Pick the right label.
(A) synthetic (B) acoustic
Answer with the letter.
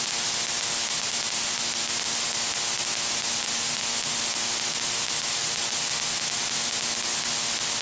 B